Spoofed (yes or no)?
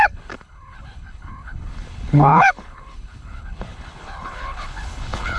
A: yes